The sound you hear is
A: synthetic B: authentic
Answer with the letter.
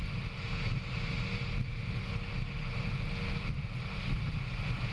B